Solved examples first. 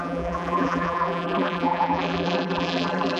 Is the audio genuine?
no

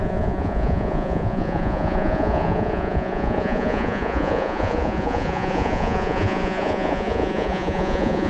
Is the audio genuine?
no